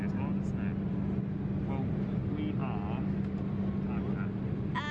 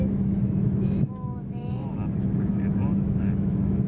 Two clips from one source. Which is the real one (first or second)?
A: first